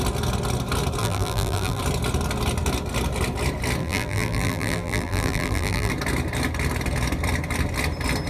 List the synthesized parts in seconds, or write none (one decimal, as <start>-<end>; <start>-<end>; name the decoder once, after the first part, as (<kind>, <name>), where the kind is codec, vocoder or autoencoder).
1.0-1.8 (vocoder, BigVGAN v2); 3.8-5.9